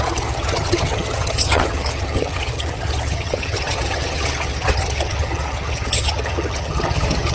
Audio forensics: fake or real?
fake